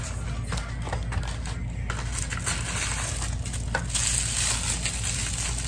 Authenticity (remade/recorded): recorded